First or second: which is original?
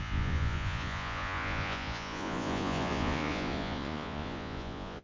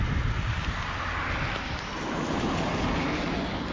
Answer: second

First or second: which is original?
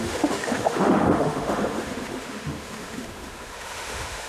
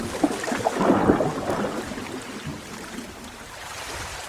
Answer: second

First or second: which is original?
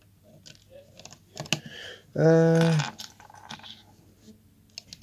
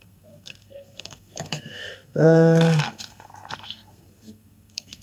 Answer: first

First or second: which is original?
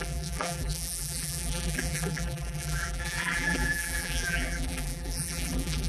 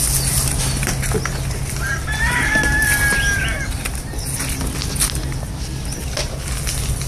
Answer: second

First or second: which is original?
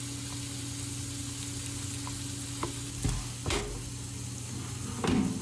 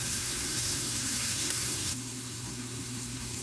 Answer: first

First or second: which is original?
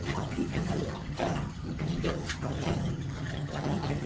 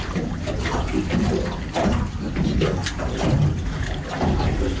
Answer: second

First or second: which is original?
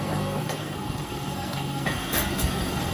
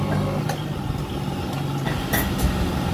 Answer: second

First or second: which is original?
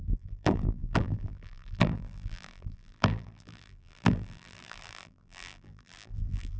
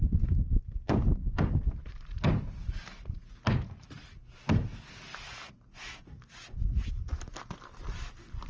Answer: second